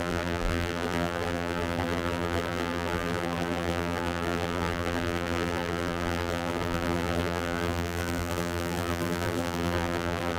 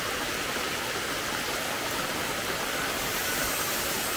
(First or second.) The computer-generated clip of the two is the first